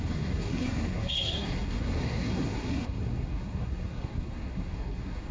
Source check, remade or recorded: remade